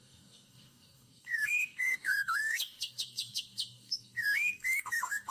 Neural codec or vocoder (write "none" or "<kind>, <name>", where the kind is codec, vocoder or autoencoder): codec, DAC